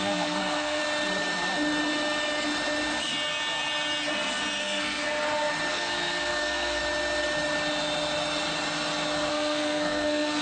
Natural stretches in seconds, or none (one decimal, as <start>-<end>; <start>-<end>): 0.8-4.6; 5.0-5.7; 6.8-9.3